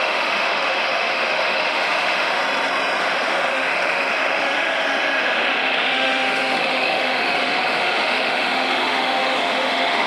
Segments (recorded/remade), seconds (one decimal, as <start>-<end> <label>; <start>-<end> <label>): 0.0-2.4 remade; 2.4-3.0 recorded; 3.0-10.1 remade

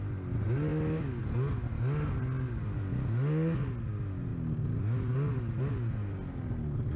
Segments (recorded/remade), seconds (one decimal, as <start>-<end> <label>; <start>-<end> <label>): 0.0-7.0 recorded

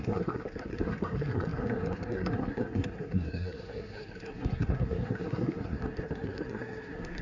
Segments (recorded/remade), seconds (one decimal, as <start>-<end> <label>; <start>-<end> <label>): 0.0-7.2 remade

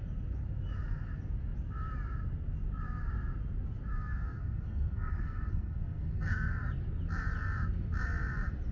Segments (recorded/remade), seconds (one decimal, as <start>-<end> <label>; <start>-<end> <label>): 0.0-4.1 recorded; 4.1-6.5 remade; 6.5-8.7 recorded

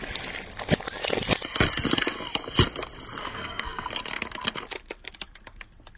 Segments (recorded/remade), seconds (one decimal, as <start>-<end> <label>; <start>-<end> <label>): 0.0-3.2 recorded; 3.2-3.9 remade; 3.9-6.0 recorded